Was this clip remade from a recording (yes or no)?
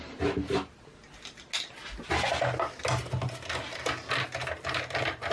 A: no